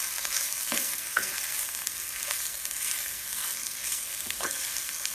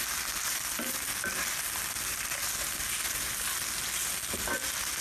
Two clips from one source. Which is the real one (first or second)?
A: second